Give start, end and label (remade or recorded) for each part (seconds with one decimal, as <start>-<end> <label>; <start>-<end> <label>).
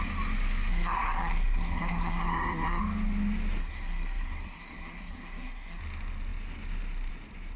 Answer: 0.0-0.7 recorded; 0.7-2.8 remade; 2.8-3.6 recorded; 3.6-5.8 remade; 5.8-7.6 recorded